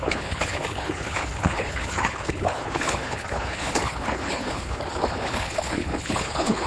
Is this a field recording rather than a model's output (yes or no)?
no